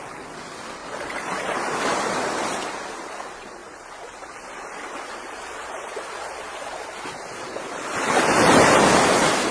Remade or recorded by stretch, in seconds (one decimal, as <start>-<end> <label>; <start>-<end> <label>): 0.0-0.8 recorded; 0.8-2.3 remade; 2.3-9.5 recorded